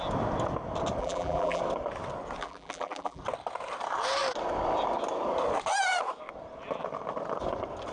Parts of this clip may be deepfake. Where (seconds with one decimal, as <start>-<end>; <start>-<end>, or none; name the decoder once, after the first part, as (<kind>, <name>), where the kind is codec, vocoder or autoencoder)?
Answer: 1.0-1.6 (vocoder, BigVGAN v2); 2.4-3.2